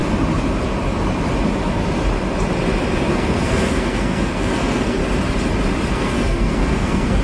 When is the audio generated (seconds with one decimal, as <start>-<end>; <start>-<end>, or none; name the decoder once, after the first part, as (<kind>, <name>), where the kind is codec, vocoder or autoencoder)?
3.1-5.0 (codec, SNAC); 5.9-7.2